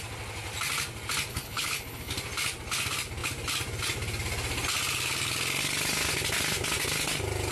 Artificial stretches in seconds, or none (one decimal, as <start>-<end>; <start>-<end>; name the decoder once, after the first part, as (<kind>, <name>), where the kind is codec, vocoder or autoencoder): 1.3-2.1 (codec, HILCodec)